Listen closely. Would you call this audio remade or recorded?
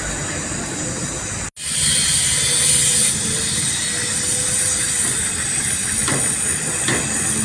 recorded